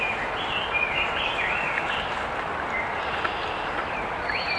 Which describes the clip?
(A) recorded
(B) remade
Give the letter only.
A